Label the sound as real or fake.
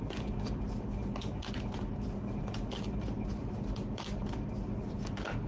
real